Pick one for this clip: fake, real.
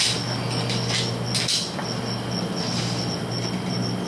real